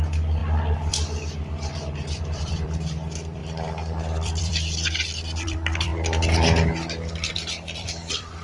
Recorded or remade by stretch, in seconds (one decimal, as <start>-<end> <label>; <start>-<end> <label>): 0.0-5.9 remade; 5.9-7.3 recorded; 7.3-8.4 remade